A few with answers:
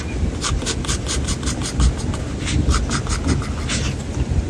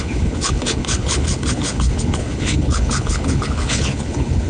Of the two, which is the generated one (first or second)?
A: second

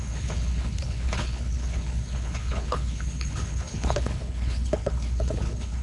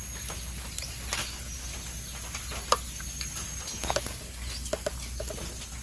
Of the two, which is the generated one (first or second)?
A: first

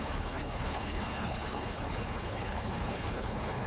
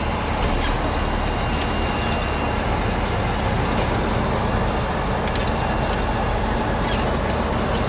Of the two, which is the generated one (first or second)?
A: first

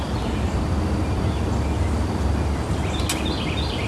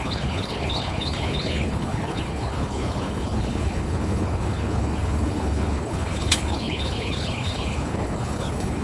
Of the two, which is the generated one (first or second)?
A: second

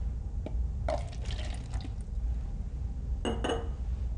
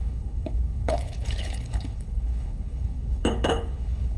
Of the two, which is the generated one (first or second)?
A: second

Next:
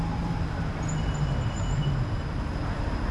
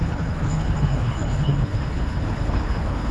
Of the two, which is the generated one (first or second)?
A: second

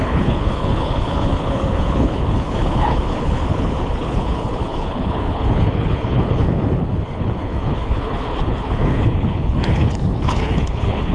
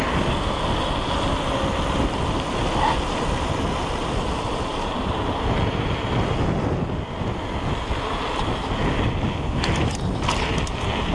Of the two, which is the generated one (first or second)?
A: first